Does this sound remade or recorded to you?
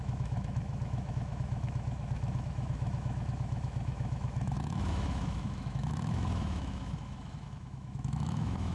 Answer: remade